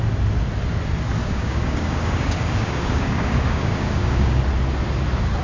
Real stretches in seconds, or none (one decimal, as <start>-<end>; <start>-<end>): 0.0-1.2; 4.4-5.4